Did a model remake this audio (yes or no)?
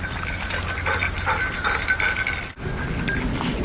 no